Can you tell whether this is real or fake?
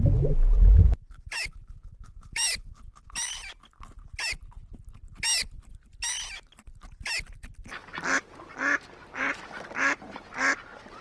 real